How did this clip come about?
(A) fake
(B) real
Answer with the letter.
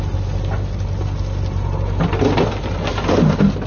B